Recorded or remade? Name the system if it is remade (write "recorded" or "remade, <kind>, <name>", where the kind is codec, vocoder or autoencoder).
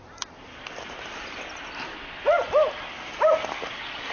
recorded